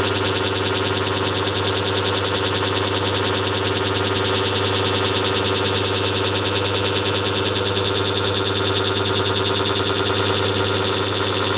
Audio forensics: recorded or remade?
recorded